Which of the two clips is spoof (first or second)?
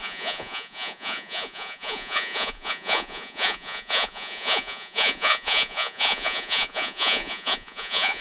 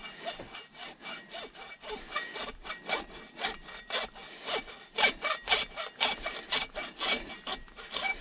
first